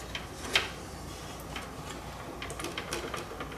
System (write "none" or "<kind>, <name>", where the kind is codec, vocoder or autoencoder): none